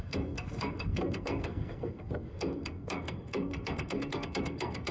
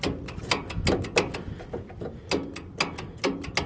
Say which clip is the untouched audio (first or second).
second